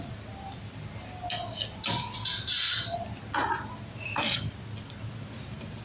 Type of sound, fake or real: real